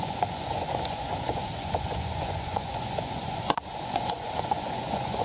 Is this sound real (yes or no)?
no